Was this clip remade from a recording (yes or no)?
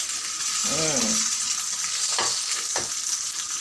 no